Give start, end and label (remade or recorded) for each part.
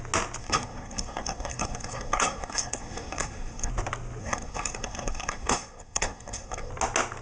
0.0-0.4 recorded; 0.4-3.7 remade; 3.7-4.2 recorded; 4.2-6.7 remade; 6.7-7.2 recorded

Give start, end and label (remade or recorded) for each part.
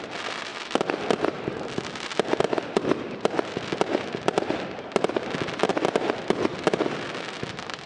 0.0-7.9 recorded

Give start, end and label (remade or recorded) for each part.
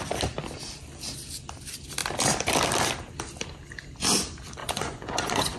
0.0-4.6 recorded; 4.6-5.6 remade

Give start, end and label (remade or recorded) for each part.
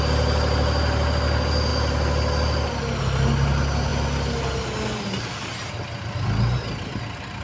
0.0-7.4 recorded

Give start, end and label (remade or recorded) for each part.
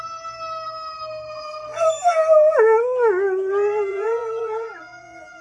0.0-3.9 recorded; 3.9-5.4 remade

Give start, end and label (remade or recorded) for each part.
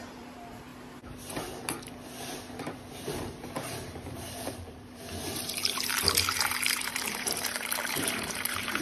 0.0-0.7 remade; 0.7-2.9 recorded; 2.9-8.8 remade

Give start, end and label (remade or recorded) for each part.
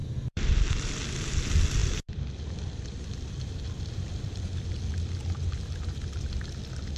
0.0-0.5 remade; 0.5-1.8 recorded; 1.8-4.8 remade; 4.8-5.2 recorded; 5.2-6.6 remade; 6.6-7.0 recorded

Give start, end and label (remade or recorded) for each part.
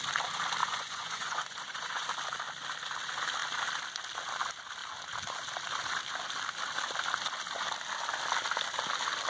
0.0-0.6 recorded; 0.6-2.1 remade; 2.1-9.3 recorded